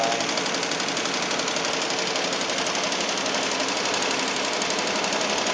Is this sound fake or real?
real